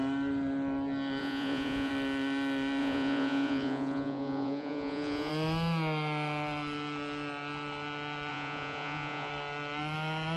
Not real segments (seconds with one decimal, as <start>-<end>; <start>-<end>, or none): 1.2-1.9; 2.8-5.3; 8.3-9.3